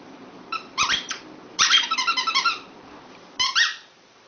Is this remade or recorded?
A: remade